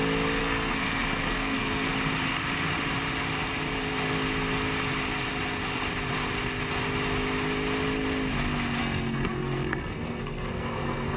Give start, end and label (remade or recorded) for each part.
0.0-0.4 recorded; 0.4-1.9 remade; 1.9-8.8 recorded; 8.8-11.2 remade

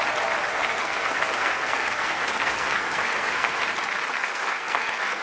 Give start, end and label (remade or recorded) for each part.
0.0-0.5 recorded; 0.5-3.6 remade; 3.6-4.2 recorded; 4.2-5.2 remade

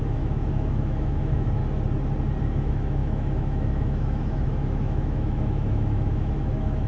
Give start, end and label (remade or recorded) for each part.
0.0-1.6 remade; 1.6-2.4 recorded; 2.4-6.9 remade

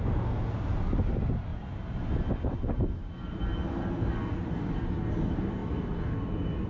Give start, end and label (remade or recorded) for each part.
0.0-6.7 recorded

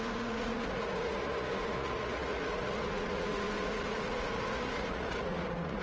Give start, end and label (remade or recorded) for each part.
0.0-5.8 remade